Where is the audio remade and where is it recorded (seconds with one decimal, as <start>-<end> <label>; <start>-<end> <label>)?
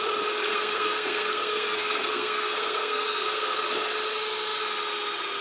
0.0-0.5 recorded; 0.5-3.7 remade; 3.7-5.4 recorded